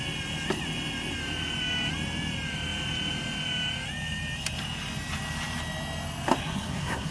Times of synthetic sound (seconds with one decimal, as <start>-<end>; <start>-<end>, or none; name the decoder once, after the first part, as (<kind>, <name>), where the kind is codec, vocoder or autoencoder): 6.4-7.1 (codec, SNAC)

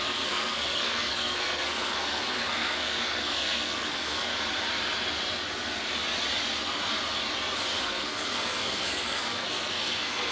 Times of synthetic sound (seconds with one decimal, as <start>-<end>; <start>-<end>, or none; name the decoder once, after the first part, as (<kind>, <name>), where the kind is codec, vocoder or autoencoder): 0.0-4.3 (codec, SNAC); 7.8-10.3

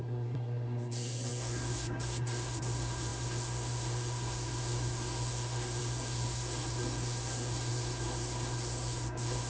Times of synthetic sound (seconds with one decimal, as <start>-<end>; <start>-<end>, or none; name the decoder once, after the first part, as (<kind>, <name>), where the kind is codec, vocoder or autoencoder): 0.0-9.5 (codec, SNAC)

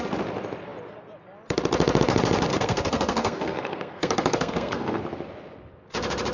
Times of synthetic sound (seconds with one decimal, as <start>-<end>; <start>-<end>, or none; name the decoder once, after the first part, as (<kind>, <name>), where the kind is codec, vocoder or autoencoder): 2.5-5.0 (codec, SNAC)

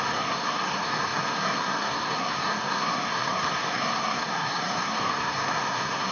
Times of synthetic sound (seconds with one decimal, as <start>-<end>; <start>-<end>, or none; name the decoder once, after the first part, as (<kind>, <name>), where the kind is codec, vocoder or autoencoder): 0.0-6.1 (codec, SNAC)

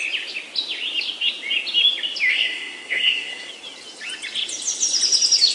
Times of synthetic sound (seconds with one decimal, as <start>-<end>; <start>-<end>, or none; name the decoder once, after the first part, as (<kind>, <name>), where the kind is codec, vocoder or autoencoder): 2.3-3.5 (codec, SNAC)

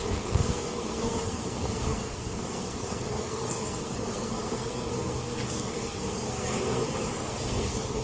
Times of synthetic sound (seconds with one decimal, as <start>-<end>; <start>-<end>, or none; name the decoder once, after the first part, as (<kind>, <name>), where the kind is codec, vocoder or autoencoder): 0.0-8.0 (codec, SNAC)

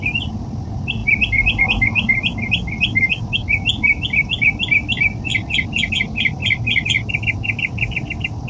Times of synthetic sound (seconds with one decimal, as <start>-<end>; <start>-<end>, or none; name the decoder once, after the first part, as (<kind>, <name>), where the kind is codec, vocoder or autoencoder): none